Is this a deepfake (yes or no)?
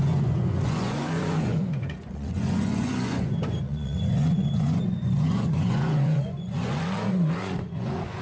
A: yes